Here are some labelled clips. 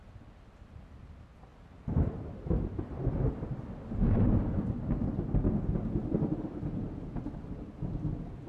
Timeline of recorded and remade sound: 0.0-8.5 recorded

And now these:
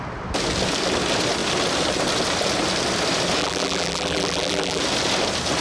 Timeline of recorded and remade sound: 0.0-3.4 recorded; 3.4-4.8 remade; 4.8-5.6 recorded